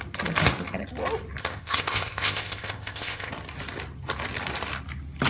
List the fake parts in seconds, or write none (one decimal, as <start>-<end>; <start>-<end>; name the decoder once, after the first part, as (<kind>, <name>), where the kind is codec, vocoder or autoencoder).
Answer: 1.4-3.3 (codec, ZipCodec)